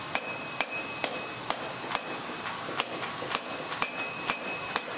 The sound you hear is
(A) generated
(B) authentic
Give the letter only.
A